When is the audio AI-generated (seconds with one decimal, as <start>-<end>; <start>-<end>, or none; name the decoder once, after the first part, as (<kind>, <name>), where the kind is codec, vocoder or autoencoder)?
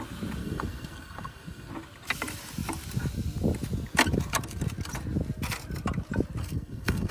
0.4-1.7 (codec, SNAC); 6.4-7.1